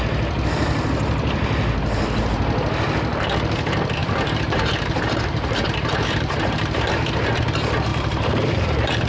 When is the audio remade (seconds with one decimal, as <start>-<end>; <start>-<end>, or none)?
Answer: 4.0-7.1; 7.9-9.1